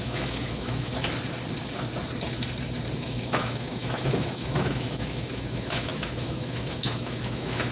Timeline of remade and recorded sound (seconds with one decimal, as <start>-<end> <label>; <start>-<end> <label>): 0.0-0.9 remade; 0.9-3.0 recorded; 3.0-7.7 remade